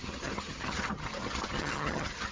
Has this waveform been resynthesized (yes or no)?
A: yes